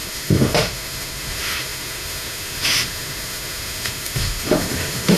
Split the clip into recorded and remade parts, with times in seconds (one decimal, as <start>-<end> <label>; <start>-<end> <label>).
0.0-5.2 remade